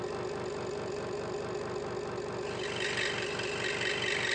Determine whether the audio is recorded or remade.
recorded